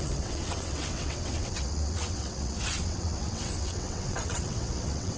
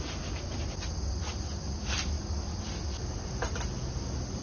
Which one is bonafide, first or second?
second